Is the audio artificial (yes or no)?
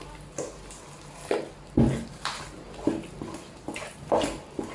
no